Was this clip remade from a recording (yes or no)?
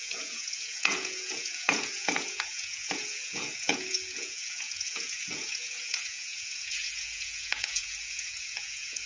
yes